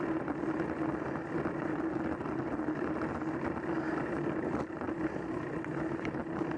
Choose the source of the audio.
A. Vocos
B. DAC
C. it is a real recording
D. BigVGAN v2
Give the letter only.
C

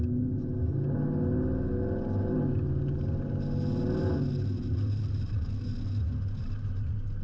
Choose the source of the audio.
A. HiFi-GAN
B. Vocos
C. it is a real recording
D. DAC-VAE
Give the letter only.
C